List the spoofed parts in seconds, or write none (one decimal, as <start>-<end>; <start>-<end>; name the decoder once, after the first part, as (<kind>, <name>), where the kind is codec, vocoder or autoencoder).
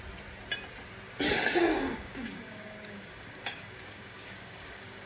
1.7-5.1 (codec, DAC)